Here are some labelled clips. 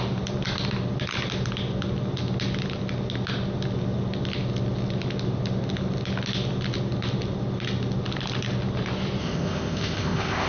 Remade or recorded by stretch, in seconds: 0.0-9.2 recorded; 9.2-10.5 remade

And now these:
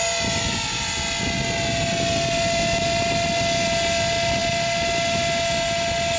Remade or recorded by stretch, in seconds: 0.0-6.2 recorded

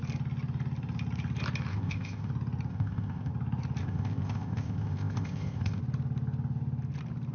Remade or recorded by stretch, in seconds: 0.0-1.7 recorded; 1.7-2.3 remade; 2.3-2.7 recorded; 2.7-3.3 remade; 3.3-3.8 recorded; 3.8-5.8 remade; 5.8-7.3 recorded

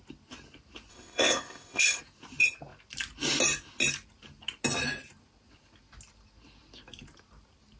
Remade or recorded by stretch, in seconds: 0.0-0.9 recorded; 0.9-2.0 remade; 2.0-7.8 recorded

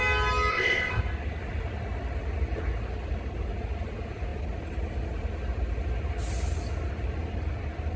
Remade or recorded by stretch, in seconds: 0.0-0.5 recorded; 0.5-1.0 remade; 1.0-8.0 recorded

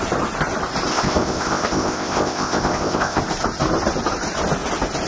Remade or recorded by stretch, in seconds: 0.0-0.9 recorded; 0.9-3.2 remade; 3.2-5.1 recorded

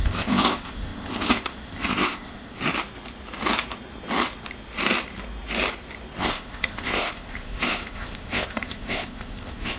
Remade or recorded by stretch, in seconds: 0.0-2.6 remade; 2.6-6.2 recorded; 6.2-9.8 remade

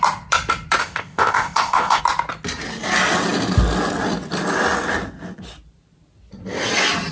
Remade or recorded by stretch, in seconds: 0.0-0.8 recorded; 0.8-2.0 remade; 2.0-7.1 recorded